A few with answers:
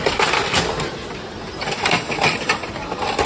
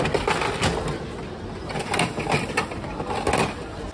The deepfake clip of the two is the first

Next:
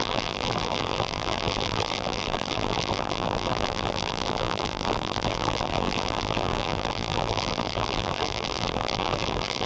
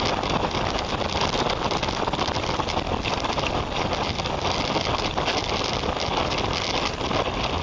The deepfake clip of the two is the first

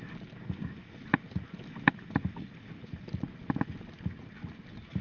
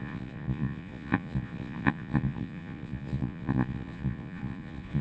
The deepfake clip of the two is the second